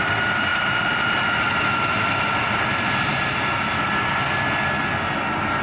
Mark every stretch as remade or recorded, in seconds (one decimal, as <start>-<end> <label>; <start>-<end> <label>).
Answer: 0.0-5.6 recorded